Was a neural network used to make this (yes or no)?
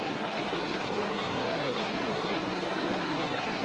yes